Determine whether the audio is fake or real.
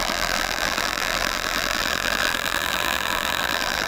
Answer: fake